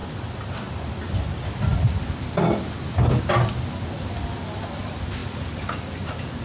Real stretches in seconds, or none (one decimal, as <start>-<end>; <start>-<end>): 0.0-6.4